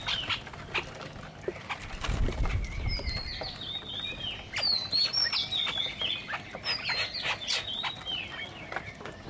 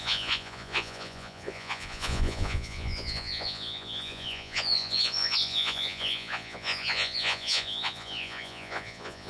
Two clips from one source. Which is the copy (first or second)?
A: second